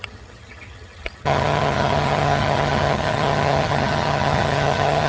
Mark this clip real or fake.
fake